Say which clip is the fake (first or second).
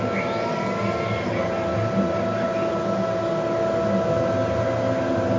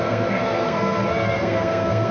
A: second